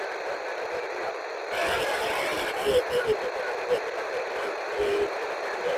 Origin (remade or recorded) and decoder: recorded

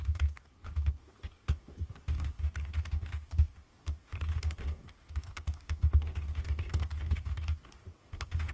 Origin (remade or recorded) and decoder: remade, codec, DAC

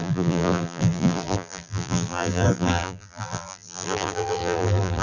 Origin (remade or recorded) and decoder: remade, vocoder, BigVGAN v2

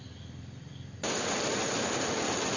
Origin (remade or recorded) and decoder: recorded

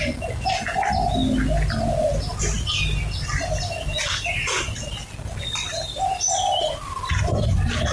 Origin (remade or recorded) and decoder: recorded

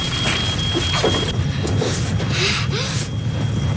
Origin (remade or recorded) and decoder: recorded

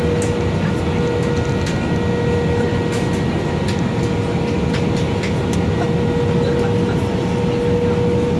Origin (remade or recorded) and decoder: recorded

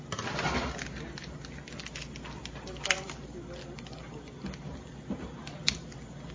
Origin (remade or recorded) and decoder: recorded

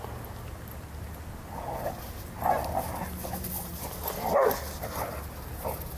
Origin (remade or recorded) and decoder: recorded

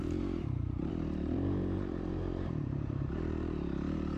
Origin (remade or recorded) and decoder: remade, vocoder, BigVGAN v2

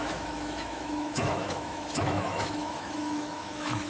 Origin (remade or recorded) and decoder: remade, autoencoder, DAC-VAE